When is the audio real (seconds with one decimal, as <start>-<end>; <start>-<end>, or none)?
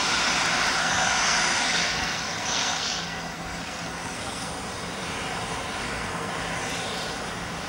0.0-0.8; 4.5-5.8; 6.3-7.7